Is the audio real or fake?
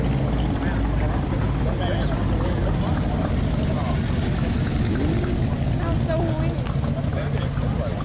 real